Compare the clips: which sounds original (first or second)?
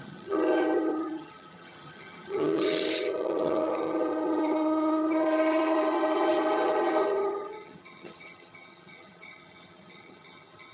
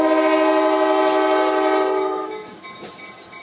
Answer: second